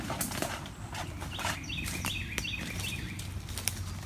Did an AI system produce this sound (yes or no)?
no